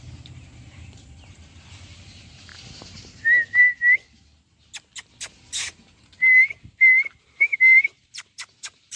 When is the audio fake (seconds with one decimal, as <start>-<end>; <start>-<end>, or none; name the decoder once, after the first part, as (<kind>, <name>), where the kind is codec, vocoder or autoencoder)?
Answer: 0.0-2.5 (vocoder, BigVGAN v2); 7.2-9.0